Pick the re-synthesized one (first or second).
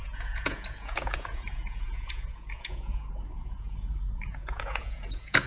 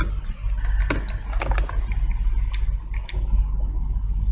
first